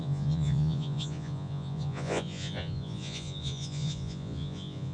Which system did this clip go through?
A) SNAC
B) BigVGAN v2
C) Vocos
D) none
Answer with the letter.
C